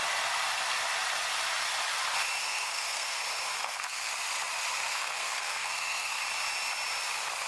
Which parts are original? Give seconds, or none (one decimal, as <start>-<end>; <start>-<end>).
0.0-2.4; 3.2-3.6; 4.1-4.9; 6.2-7.5